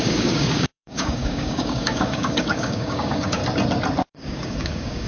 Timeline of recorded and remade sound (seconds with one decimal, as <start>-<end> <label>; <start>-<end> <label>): 0.0-3.4 remade; 3.4-4.1 recorded; 4.1-5.1 remade